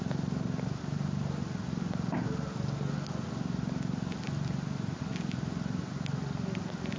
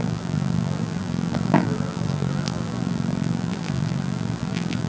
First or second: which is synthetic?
second